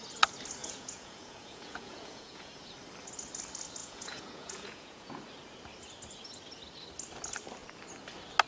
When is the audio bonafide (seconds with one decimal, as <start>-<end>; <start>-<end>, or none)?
0.0-0.6; 2.5-3.8; 5.2-8.5